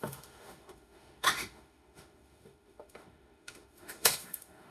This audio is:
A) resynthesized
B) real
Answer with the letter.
A